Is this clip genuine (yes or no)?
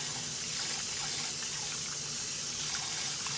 yes